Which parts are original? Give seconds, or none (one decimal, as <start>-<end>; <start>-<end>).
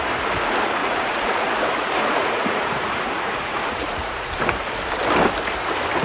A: 0.0-0.8; 4.4-6.0